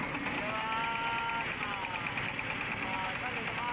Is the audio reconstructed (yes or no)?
no